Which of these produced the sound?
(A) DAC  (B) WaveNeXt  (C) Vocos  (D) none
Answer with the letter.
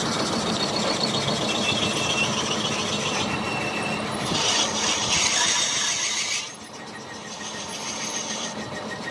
D